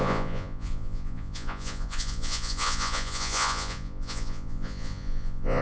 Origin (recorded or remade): remade